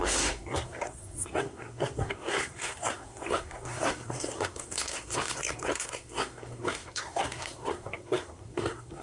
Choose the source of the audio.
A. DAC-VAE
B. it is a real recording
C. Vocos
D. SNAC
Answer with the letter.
D